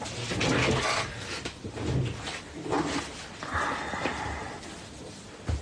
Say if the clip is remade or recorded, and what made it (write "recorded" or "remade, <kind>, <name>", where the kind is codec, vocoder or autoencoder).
recorded